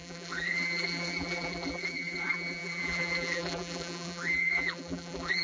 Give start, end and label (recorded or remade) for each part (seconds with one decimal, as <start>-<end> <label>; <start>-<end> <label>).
0.0-5.4 remade